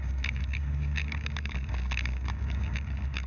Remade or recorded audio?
remade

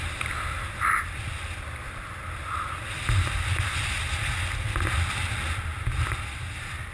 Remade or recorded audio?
recorded